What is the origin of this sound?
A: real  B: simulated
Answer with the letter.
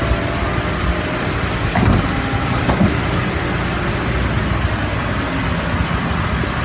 A